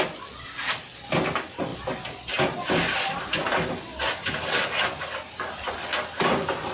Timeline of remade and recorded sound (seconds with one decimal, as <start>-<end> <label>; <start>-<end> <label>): 0.0-6.7 recorded